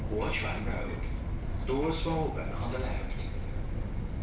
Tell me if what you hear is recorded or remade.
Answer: recorded